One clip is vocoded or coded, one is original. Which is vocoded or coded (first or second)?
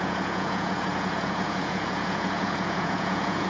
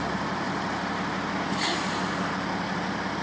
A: first